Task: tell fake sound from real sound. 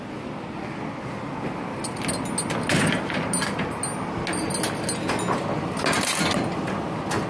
real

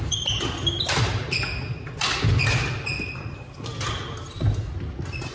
real